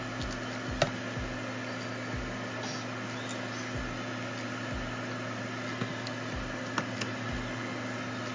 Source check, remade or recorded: recorded